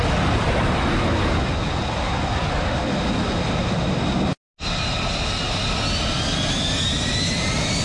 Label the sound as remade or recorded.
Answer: recorded